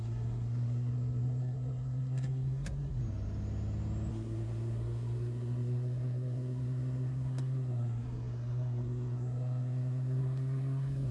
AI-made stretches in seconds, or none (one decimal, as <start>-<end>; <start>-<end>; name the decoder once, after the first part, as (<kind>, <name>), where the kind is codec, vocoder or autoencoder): 0.0-3.0 (codec, SNAC); 4.1-11.1